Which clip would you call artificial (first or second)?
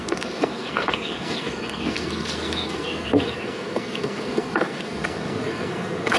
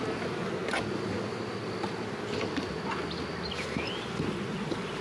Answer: first